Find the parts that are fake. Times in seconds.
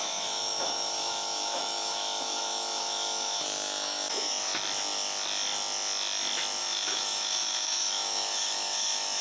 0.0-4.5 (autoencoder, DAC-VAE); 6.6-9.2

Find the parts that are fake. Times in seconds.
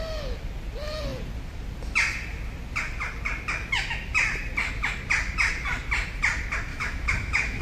6.7-7.6 (autoencoder, DAC-VAE)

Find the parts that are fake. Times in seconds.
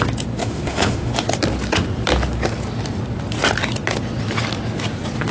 0.4-1.1 (autoencoder, DAC-VAE)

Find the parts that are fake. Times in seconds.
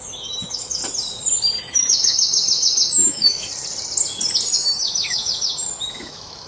0.0-0.8 (autoencoder, DAC-VAE); 1.6-3.5; 4.5-6.5